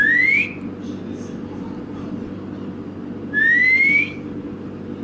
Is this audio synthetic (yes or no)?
no